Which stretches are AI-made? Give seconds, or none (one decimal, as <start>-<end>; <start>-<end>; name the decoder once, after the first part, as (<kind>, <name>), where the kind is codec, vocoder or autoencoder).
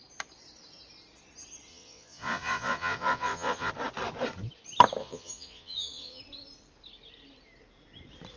1.7-3.7 (vocoder, Vocos); 5.0-6.2